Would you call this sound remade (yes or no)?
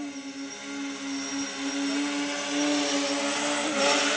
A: no